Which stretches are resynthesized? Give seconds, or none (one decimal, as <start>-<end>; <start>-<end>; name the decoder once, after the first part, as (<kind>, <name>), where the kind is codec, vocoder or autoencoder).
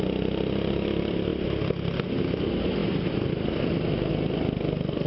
none